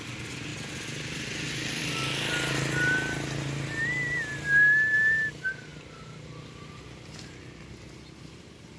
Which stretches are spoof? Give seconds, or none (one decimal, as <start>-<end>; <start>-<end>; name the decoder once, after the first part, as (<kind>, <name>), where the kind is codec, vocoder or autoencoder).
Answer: none